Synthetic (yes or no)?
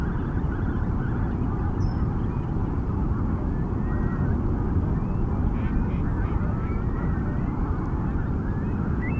no